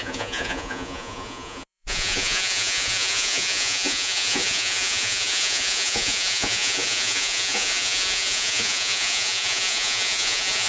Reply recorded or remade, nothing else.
remade